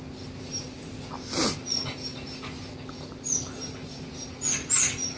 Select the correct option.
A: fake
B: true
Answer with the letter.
B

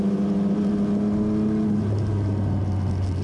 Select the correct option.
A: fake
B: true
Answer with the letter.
B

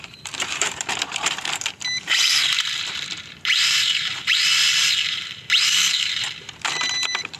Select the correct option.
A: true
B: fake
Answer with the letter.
B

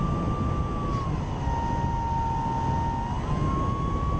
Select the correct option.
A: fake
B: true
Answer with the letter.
B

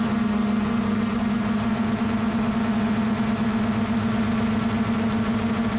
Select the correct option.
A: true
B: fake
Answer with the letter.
A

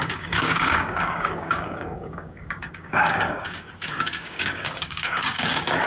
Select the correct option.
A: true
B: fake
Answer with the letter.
B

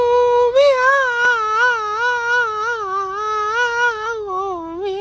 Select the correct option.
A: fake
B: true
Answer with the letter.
B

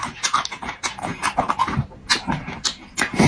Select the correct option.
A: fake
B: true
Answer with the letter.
B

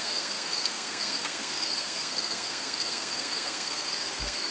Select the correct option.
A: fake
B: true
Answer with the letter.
A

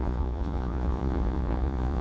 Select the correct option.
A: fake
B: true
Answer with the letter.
A